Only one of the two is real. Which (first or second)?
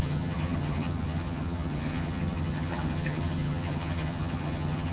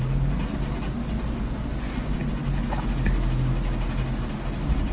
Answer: second